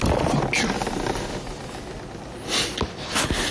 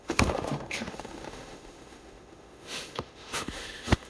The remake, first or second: second